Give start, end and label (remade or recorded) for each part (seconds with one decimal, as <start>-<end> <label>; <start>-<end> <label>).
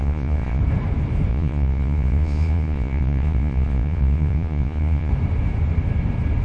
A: 0.0-0.6 remade; 0.6-1.3 recorded; 1.3-5.1 remade; 5.1-6.4 recorded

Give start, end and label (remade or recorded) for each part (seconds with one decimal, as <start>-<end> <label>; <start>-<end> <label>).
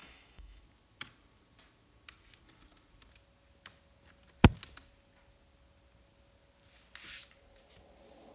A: 0.0-0.6 remade; 0.6-8.3 recorded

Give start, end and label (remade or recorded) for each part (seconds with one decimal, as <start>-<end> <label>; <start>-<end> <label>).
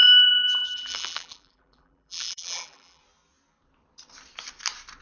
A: 0.0-3.0 remade; 3.0-5.0 recorded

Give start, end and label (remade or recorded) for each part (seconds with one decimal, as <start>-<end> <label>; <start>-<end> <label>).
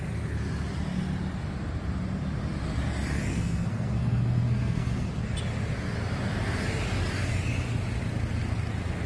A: 0.0-3.3 recorded; 3.3-5.1 remade; 5.1-9.1 recorded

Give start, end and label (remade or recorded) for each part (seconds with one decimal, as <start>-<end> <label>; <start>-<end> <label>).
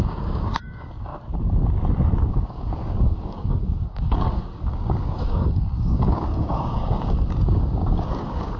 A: 0.0-1.1 remade; 1.1-2.3 recorded; 2.3-8.6 remade